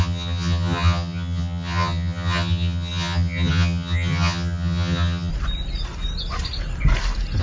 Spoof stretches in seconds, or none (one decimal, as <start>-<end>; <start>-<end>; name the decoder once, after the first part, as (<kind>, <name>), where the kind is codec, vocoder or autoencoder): 0.0-5.3 (vocoder, HiFi-GAN)